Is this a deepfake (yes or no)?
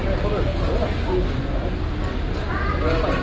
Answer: no